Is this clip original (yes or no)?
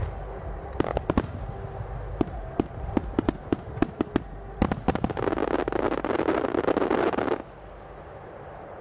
yes